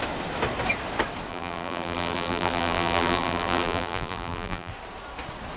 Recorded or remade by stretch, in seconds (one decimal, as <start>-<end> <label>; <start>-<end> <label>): 0.0-1.3 recorded; 1.3-4.7 remade; 4.7-5.6 recorded

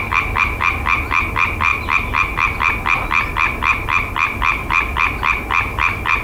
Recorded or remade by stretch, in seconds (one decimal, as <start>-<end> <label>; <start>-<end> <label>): 0.0-3.7 recorded; 3.7-4.3 remade; 4.3-6.2 recorded

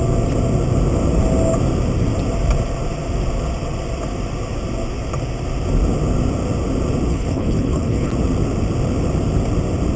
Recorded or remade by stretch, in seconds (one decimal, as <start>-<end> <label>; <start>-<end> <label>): 0.0-7.1 recorded; 7.1-8.1 remade; 8.1-10.0 recorded

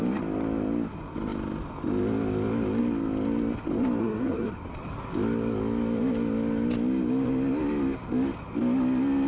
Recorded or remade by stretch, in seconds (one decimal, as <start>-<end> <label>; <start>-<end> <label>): 0.0-4.0 recorded; 4.0-4.5 remade; 4.5-9.3 recorded

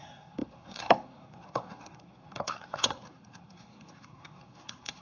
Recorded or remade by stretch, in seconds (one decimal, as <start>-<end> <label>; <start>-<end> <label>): 0.0-5.0 remade

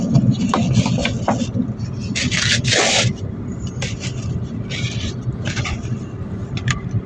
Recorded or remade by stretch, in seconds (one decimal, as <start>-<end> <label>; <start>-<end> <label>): 0.0-1.0 remade; 1.0-5.3 recorded; 5.3-7.1 remade

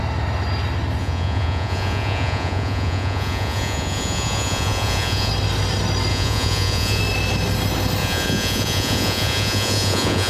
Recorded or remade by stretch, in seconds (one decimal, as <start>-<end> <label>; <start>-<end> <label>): 0.0-1.0 recorded; 1.0-5.3 remade; 5.3-6.1 recorded; 6.1-7.0 remade; 7.0-8.0 recorded; 8.0-10.3 remade